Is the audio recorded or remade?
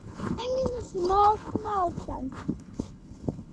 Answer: remade